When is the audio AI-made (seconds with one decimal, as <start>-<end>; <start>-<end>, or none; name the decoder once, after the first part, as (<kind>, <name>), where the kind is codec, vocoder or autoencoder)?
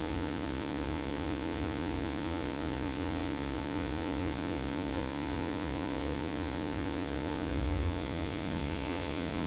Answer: 0.0-9.5 (vocoder, Vocos)